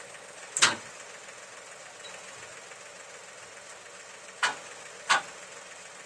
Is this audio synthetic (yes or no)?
no